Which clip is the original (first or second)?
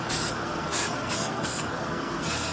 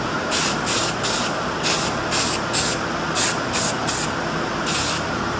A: second